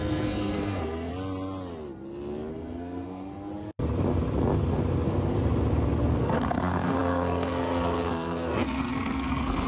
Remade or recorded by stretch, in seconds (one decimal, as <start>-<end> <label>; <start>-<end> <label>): 0.0-1.1 remade; 1.1-2.5 recorded; 2.5-3.5 remade; 3.5-6.2 recorded; 6.2-9.7 remade

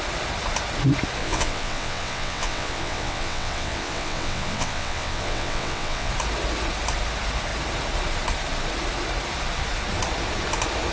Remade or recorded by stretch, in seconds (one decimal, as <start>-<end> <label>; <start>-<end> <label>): 0.0-1.2 recorded; 1.2-6.1 remade; 6.1-10.9 recorded

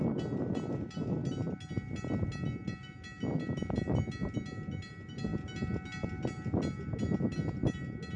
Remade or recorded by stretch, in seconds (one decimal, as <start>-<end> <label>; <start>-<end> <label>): 0.0-8.2 recorded

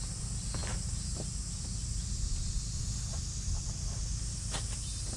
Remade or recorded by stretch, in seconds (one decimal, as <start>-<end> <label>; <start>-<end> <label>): 0.0-5.2 recorded

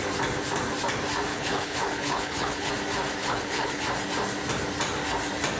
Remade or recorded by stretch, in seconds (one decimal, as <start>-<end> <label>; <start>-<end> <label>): 0.0-1.3 recorded; 1.3-2.7 remade; 2.7-3.2 recorded; 3.2-3.8 remade; 3.8-5.6 recorded

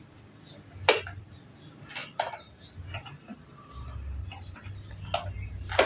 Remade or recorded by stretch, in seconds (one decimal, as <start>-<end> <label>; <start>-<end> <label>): 0.0-5.9 recorded

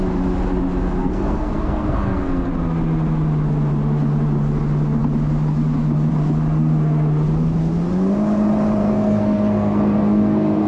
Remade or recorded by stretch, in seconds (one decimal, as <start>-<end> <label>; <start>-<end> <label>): 0.0-1.0 recorded; 1.0-2.5 remade; 2.5-8.8 recorded; 8.8-10.7 remade